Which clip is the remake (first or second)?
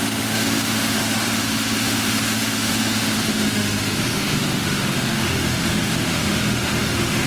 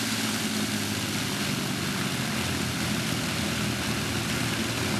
first